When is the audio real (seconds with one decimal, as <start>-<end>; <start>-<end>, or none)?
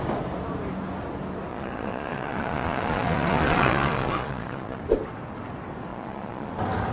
0.0-1.5; 4.8-5.9; 6.5-6.9